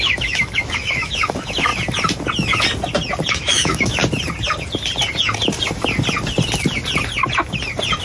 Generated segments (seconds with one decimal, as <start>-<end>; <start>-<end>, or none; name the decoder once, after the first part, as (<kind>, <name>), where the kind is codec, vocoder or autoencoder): 0.0-1.7 (autoencoder, DAC-VAE); 3.3-4.0